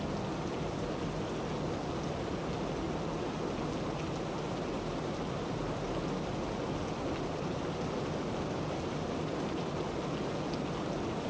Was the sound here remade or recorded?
recorded